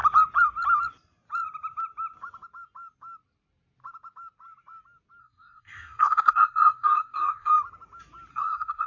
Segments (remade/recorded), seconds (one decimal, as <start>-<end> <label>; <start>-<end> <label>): 0.0-5.2 recorded; 5.2-7.5 remade; 7.5-8.3 recorded; 8.3-8.9 remade